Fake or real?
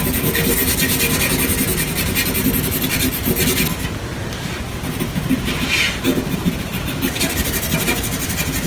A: real